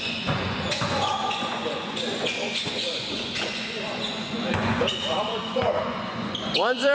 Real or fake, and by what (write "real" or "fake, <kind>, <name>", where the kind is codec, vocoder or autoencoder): fake, vocoder, Vocos